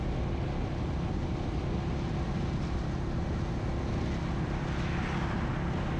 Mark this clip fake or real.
real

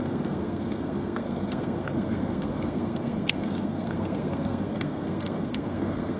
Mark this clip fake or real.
fake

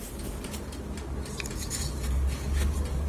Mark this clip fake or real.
real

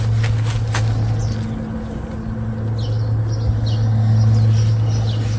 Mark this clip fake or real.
real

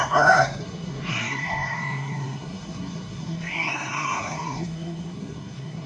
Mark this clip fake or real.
fake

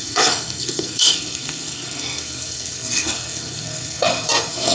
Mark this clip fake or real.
fake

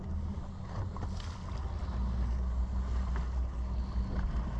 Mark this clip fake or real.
real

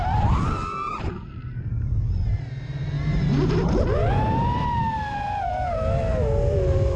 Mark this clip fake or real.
real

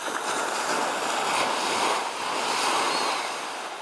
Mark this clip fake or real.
real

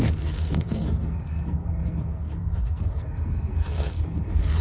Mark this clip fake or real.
fake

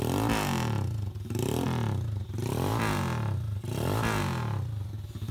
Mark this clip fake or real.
real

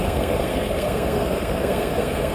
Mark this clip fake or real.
fake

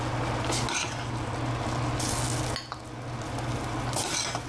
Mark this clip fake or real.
real